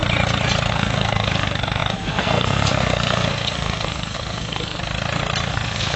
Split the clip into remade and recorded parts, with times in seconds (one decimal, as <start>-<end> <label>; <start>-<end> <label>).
0.0-0.7 recorded; 0.7-4.8 remade; 4.8-5.5 recorded; 5.5-6.0 remade